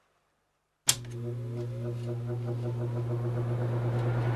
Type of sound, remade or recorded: recorded